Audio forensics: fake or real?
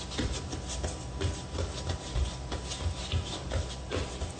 real